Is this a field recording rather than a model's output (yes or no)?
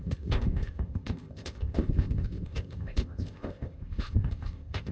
no